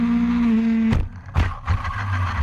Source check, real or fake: real